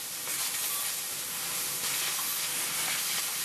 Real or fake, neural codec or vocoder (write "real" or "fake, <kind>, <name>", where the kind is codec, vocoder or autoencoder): real